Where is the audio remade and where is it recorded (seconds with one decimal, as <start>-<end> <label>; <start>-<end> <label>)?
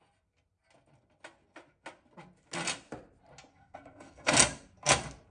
0.0-3.5 recorded; 3.5-4.3 remade; 4.3-5.3 recorded